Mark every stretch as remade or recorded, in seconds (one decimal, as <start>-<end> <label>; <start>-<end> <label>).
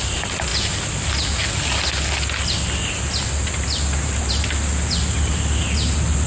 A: 0.0-6.3 recorded